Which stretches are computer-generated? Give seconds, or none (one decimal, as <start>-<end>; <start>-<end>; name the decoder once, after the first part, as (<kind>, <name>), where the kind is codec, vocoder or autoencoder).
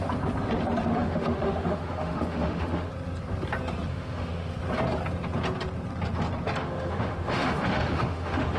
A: 0.9-2.9 (autoencoder, DAC-VAE); 3.9-4.5; 6.6-8.6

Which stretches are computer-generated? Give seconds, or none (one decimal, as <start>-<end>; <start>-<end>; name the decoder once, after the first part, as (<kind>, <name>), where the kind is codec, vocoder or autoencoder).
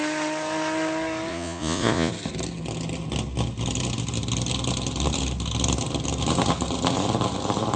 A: 1.3-2.1 (vocoder, Vocos)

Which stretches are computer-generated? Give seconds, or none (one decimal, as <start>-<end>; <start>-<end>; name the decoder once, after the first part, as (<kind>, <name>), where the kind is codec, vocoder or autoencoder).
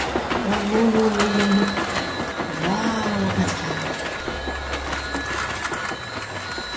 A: none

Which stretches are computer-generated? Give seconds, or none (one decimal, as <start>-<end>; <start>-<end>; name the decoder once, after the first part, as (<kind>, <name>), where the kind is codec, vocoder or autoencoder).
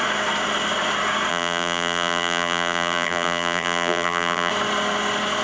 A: 1.3-4.5 (vocoder, BigVGAN v2)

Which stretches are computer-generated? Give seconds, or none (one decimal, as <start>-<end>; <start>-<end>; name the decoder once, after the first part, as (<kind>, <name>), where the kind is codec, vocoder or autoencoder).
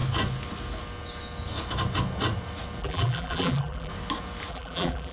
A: 2.8-3.9 (vocoder, BigVGAN v2); 4.5-5.1